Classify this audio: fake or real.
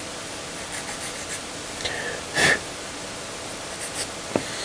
real